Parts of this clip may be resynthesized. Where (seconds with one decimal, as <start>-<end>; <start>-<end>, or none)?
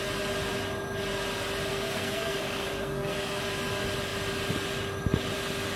1.7-3.4